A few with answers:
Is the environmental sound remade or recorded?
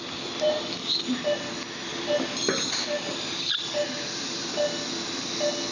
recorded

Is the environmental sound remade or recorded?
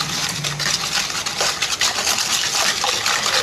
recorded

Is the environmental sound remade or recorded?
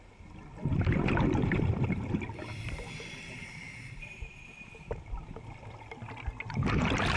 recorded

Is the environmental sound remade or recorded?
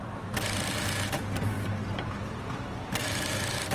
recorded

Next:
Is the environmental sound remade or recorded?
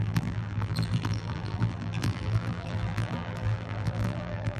remade